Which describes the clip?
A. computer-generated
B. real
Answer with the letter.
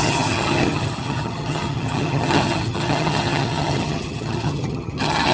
A